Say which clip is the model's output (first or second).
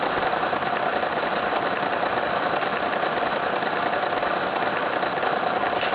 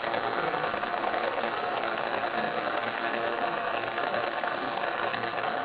second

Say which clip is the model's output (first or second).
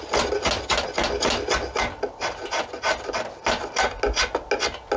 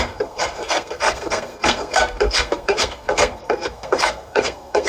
second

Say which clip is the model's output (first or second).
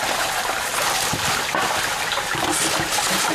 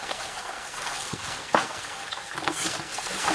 second